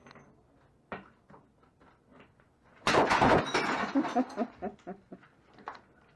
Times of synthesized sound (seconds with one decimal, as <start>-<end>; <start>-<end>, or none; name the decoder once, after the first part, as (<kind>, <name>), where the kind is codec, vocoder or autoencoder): 2.1-3.4 (vocoder, Vocos)